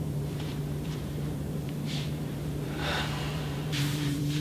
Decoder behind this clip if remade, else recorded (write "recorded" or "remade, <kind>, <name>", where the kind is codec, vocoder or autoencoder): remade, vocoder, BigVGAN v2